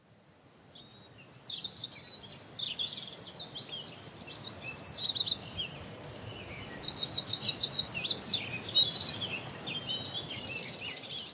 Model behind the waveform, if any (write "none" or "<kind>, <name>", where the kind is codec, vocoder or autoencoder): none